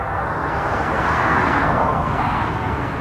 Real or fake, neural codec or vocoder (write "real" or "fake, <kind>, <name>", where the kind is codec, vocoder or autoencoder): fake, codec, SNAC